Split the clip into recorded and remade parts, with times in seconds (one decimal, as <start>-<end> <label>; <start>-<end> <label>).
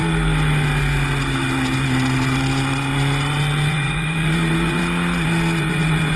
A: 0.0-3.7 recorded; 3.7-4.8 remade; 4.8-5.6 recorded; 5.6-6.2 remade